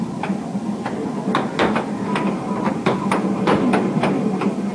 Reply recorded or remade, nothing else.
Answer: recorded